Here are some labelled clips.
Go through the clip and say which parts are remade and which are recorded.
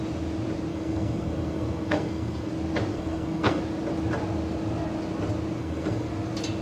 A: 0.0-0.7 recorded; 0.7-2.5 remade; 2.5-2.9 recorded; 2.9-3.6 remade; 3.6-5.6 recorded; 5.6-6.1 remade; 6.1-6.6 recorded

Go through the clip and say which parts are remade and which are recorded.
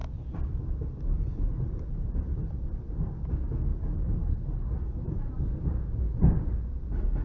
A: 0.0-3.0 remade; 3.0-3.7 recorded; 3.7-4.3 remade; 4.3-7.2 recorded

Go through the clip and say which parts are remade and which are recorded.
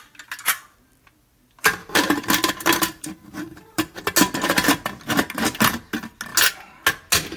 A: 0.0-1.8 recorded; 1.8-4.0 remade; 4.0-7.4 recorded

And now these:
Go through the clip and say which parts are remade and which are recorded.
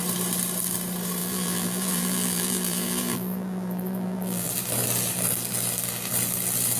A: 0.0-1.2 recorded; 1.2-4.5 remade; 4.5-6.8 recorded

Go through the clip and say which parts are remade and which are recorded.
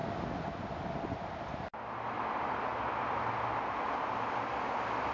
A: 0.0-5.1 recorded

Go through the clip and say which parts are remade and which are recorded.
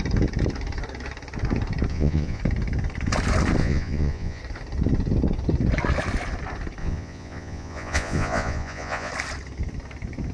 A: 0.0-1.9 recorded; 1.9-2.4 remade; 2.4-3.6 recorded; 3.6-4.4 remade; 4.4-6.8 recorded; 6.8-9.1 remade; 9.1-10.3 recorded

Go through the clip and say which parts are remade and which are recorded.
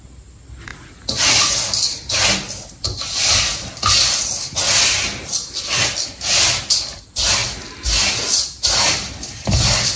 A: 0.0-10.0 recorded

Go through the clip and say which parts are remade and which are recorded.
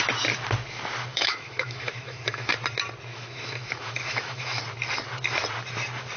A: 0.0-1.1 recorded; 1.1-2.5 remade; 2.5-3.1 recorded; 3.1-4.6 remade; 4.6-6.2 recorded